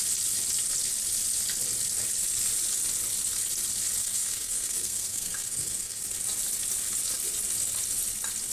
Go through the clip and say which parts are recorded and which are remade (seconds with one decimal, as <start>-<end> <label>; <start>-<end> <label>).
0.0-4.0 recorded; 4.0-6.0 remade; 6.0-8.5 recorded